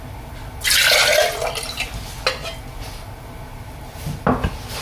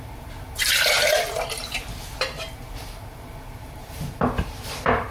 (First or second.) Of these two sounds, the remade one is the second